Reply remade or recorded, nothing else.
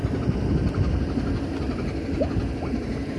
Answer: recorded